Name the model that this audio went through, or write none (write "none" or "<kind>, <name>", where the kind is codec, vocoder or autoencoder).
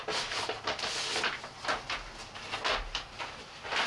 none